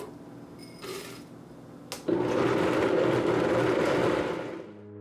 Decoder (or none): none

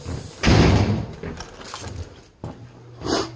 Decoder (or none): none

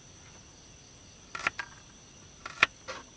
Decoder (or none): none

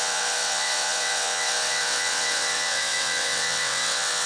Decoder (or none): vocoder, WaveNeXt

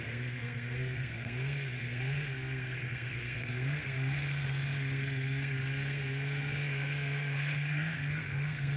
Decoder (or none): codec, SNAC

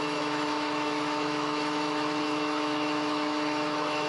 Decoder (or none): autoencoder, DAC-VAE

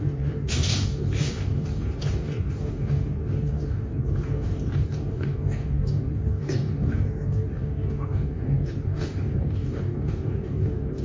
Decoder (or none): codec, DAC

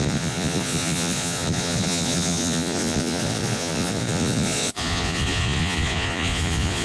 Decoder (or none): vocoder, Vocos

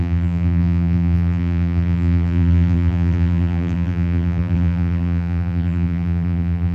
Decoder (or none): vocoder, BigVGAN v2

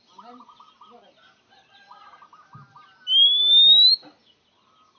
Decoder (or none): none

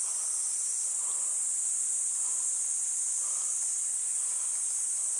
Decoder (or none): none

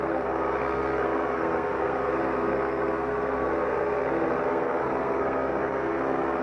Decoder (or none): codec, SNAC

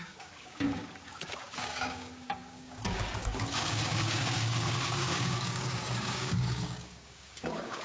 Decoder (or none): codec, DAC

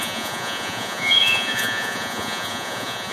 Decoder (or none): vocoder, Vocos